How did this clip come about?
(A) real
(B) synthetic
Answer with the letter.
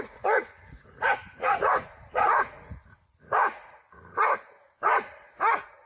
B